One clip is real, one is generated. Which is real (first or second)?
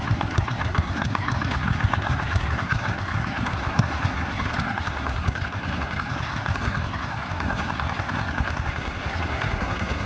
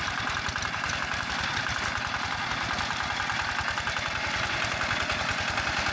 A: second